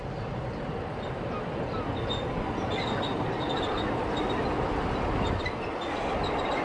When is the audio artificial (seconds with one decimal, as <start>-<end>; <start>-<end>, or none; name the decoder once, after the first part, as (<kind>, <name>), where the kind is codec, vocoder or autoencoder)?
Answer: 4.0-6.6 (vocoder, BigVGAN v2)